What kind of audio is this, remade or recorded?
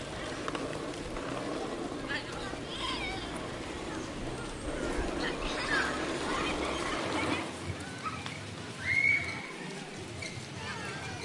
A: recorded